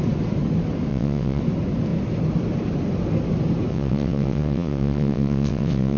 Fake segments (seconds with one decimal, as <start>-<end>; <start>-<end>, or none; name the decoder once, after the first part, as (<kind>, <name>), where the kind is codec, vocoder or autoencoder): 0.9-1.4 (vocoder, WaveNeXt); 3.7-6.0